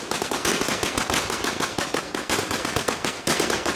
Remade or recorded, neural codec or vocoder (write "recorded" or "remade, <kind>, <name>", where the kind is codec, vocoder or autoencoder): remade, codec, SNAC